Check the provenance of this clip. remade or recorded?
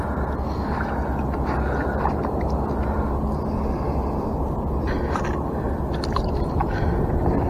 recorded